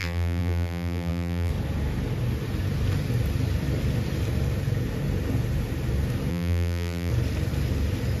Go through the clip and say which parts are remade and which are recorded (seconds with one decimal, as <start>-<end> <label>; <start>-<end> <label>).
0.0-1.5 remade; 1.5-6.3 recorded; 6.3-7.1 remade; 7.1-8.2 recorded